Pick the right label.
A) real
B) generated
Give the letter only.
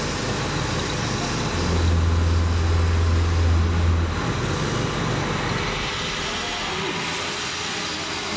A